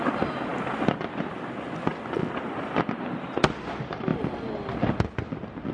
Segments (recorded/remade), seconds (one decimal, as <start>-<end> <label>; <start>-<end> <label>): 0.0-5.7 recorded